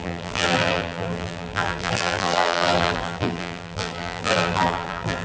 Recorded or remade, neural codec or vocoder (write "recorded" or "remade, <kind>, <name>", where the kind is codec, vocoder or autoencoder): remade, vocoder, BigVGAN v2